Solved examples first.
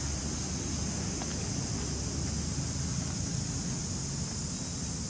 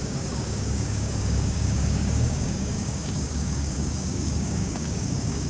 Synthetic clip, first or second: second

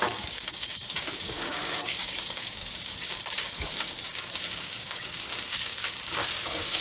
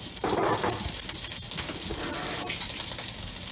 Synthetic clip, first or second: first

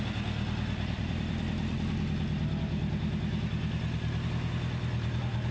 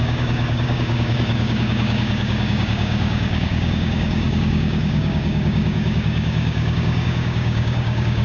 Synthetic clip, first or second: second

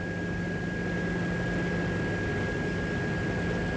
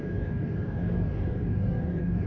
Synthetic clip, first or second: second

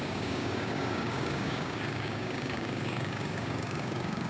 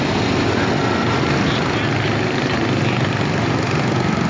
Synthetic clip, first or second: first